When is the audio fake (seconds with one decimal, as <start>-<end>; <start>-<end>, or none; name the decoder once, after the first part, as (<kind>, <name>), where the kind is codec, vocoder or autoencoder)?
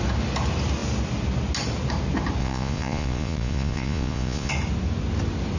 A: 2.4-4.5 (vocoder, Vocos)